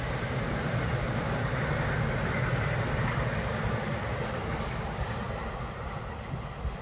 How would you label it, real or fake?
real